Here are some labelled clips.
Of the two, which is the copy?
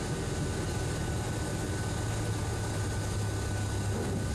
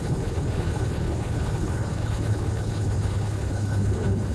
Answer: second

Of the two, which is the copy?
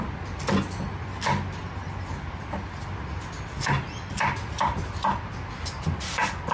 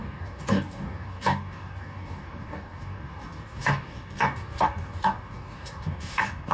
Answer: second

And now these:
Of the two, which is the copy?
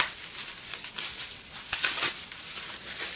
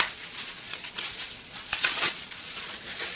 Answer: second